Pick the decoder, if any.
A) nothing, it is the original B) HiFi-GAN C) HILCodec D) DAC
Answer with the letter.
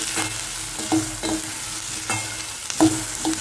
A